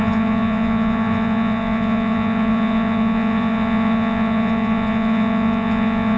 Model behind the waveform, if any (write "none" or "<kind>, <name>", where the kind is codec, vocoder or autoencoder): vocoder, Vocos